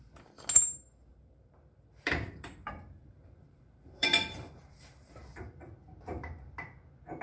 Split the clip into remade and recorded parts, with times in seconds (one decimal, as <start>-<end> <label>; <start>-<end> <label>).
0.0-1.1 recorded; 1.1-5.2 remade; 5.2-7.2 recorded